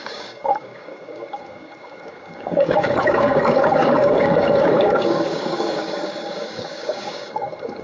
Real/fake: fake